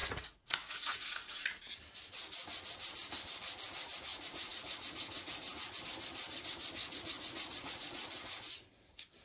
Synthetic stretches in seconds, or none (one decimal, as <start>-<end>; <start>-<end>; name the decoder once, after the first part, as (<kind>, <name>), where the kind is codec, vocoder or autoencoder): 0.0-1.7 (vocoder, Vocos); 4.1-5.8; 6.8-8.4